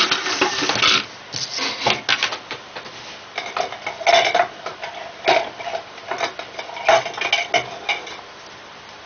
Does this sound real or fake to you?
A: real